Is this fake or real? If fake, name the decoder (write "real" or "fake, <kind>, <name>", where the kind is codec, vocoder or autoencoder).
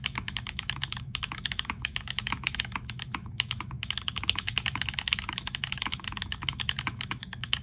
fake, autoencoder, DAC-VAE